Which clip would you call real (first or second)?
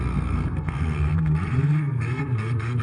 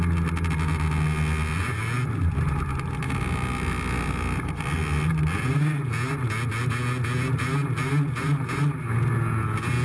second